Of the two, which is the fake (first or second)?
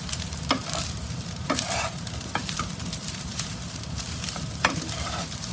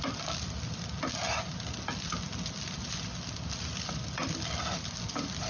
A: first